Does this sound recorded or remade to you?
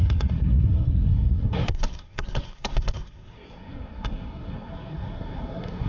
remade